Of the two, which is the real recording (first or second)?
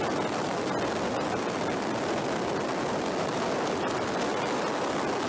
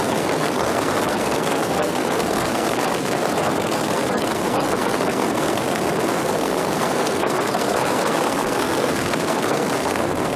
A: first